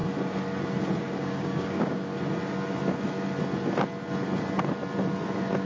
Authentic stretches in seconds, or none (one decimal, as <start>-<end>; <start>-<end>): 0.0-1.0; 2.1-5.6